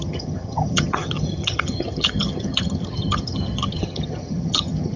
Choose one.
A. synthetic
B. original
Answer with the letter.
A